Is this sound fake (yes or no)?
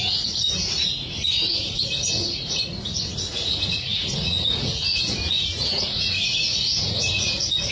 yes